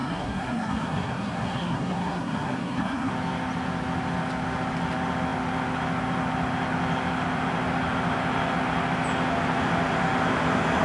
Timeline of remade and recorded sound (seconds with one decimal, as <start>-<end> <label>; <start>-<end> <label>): 0.0-3.1 remade; 3.1-10.8 recorded